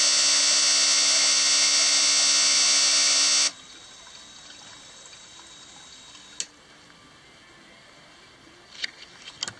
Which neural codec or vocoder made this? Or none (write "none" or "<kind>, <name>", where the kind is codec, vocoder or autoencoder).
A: none